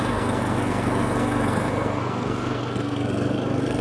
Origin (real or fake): fake